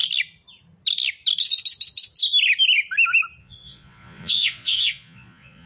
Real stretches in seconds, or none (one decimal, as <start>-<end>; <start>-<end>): 0.0-3.4